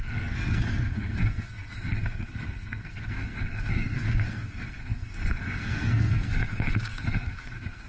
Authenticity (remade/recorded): remade